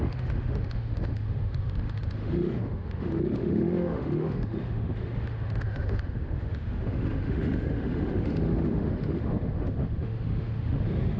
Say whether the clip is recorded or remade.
remade